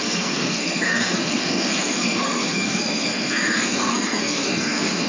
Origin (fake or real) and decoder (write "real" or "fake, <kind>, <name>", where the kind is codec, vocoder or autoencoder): fake, codec, SNAC